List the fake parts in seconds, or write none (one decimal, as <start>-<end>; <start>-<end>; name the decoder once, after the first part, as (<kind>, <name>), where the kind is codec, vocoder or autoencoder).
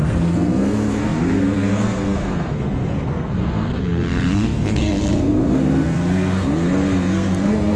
0.0-7.8 (codec, SNAC)